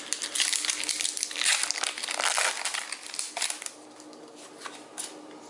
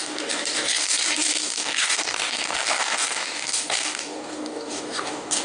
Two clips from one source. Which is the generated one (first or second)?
second